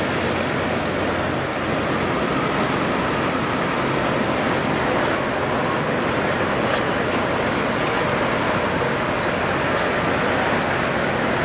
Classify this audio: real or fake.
real